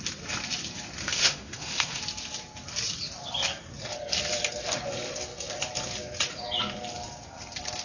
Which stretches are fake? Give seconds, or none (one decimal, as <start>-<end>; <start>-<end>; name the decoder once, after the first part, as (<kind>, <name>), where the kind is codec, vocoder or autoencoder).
1.0-2.0 (autoencoder, DAC-VAE)